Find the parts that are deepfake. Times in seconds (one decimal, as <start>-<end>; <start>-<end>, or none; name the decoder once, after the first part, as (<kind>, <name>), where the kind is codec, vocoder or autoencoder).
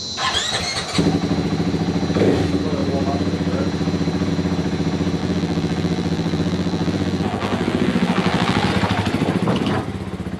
5.2-8.7 (vocoder, BigVGAN v2)